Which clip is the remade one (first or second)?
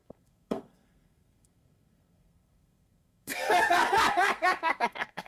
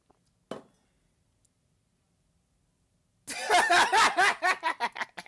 first